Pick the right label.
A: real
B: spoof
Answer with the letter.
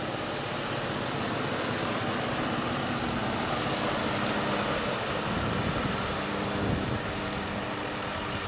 A